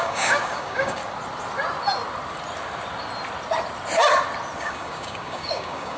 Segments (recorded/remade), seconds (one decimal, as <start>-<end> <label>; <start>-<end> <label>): 0.0-1.0 remade; 1.0-4.6 recorded; 4.6-6.0 remade